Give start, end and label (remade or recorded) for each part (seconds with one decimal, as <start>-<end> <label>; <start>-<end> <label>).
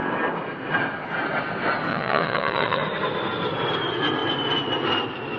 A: 0.0-1.9 recorded; 1.9-2.8 remade; 2.8-5.4 recorded